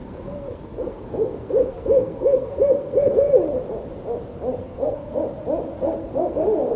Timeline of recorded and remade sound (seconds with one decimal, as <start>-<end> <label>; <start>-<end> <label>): 0.0-3.3 remade; 3.3-4.6 recorded; 4.6-5.2 remade; 5.2-5.7 recorded; 5.7-6.8 remade